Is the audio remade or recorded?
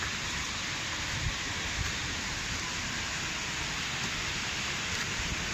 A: recorded